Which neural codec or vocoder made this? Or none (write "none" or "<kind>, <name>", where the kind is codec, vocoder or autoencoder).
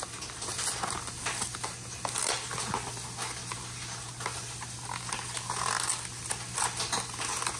none